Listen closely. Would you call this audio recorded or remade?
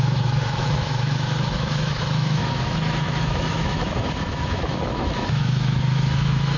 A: remade